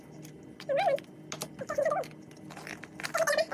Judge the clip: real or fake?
real